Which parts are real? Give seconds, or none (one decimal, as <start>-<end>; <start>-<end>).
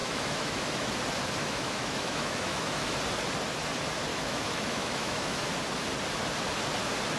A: 0.9-1.4; 2.9-4.1; 5.4-7.2